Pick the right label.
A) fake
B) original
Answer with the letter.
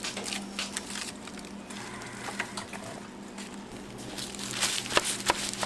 B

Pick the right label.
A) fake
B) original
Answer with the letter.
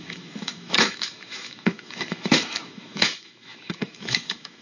A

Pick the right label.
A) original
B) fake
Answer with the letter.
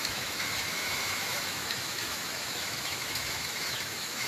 B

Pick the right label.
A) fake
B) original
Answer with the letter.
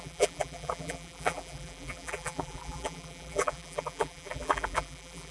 A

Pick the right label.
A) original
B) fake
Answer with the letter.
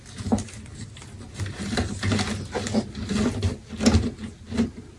A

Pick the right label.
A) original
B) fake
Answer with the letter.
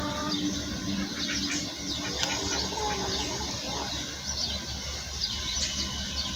A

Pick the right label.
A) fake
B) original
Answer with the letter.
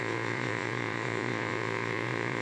A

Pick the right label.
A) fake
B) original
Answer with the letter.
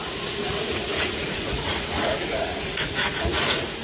A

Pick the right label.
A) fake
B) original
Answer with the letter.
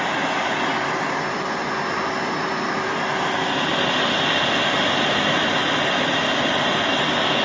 B